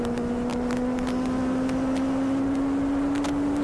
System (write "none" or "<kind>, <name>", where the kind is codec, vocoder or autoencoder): none